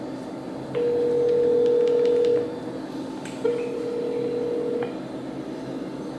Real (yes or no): yes